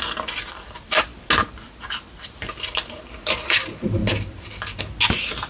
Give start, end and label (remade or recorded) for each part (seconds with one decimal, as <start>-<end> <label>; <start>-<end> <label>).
0.0-5.5 recorded